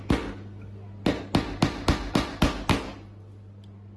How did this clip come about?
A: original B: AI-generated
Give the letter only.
A